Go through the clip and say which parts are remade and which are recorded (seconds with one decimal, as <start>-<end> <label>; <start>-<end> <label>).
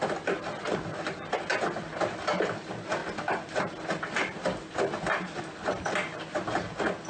0.0-7.1 recorded